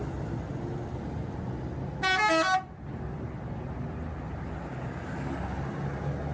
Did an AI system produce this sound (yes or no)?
no